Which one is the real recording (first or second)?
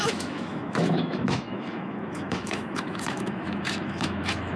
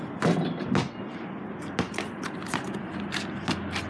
second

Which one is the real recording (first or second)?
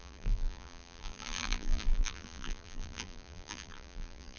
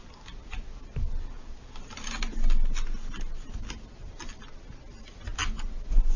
second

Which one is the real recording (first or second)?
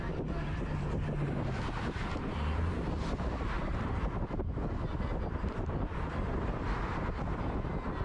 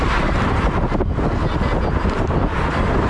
second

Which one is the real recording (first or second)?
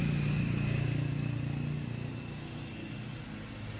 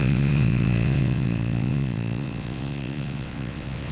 first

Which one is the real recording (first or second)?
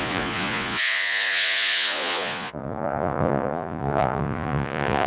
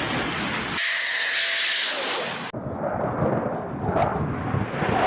second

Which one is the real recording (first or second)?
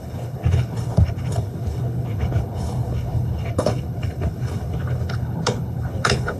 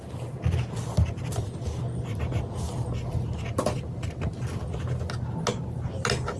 second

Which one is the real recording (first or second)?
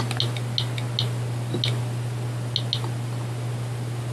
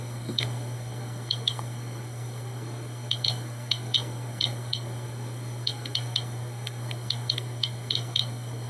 first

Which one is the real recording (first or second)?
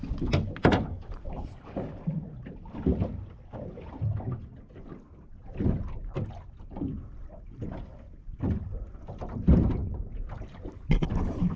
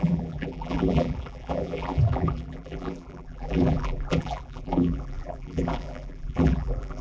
first